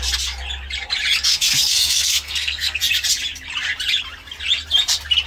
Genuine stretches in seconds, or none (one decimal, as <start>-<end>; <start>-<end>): 0.0-1.3; 2.8-5.3